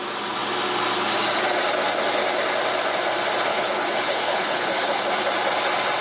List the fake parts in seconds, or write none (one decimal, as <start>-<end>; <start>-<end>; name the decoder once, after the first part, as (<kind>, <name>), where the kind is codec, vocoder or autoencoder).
3.5-5.0 (codec, HILCodec)